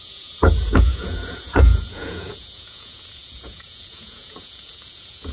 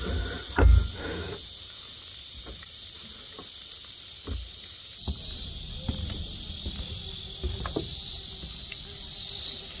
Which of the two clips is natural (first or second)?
second